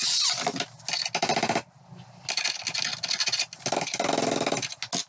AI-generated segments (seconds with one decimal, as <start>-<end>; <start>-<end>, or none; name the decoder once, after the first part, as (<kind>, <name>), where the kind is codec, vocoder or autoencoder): none